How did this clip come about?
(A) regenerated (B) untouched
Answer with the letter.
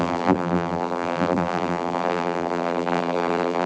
A